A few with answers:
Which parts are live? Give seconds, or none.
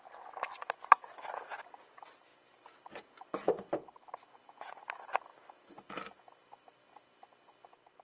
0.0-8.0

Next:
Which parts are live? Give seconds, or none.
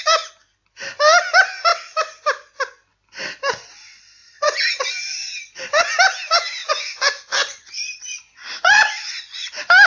0.0-4.2; 4.9-6.6; 9.5-9.9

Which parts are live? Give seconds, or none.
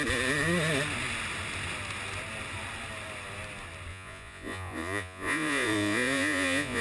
0.0-3.9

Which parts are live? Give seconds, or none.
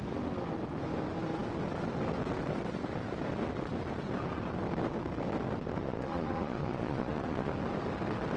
0.0-5.8; 7.5-8.4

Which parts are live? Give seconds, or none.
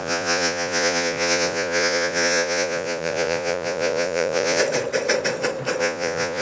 4.6-5.8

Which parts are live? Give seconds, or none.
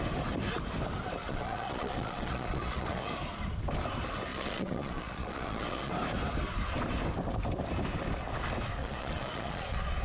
0.0-1.2; 3.1-4.3; 5.9-8.8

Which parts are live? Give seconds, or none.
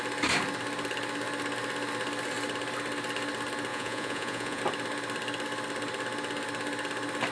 0.0-3.7; 4.6-7.3